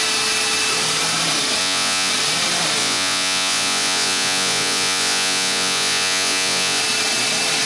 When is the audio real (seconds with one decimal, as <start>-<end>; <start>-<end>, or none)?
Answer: 0.0-1.6; 2.1-2.8; 6.8-7.7

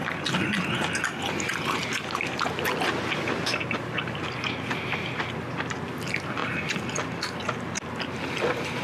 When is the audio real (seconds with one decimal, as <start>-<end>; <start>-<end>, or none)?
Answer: 0.0-8.8

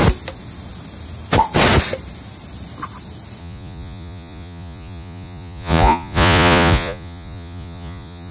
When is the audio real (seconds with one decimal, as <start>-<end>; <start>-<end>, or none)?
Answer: 0.0-3.4

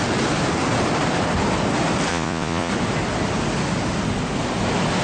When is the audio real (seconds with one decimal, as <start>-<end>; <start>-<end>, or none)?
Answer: 0.0-2.1; 2.7-5.0